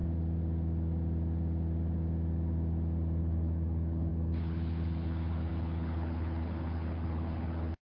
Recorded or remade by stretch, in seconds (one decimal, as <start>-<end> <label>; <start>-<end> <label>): 0.0-3.2 recorded; 3.2-7.8 remade